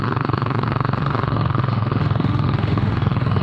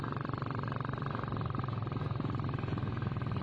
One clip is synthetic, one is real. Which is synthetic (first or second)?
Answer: first